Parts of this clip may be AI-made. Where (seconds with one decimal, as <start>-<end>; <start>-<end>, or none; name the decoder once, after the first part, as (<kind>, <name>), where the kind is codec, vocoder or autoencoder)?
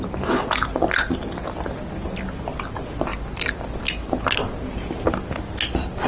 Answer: none